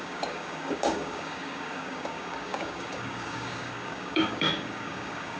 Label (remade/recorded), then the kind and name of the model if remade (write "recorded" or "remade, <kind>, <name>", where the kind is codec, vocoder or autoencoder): remade, codec, DAC